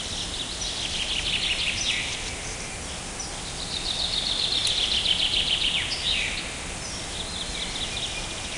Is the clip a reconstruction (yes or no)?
no